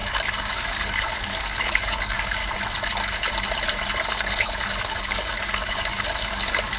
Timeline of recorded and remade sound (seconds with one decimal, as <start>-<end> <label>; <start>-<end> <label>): 0.0-2.4 remade; 2.4-4.1 recorded; 4.1-6.8 remade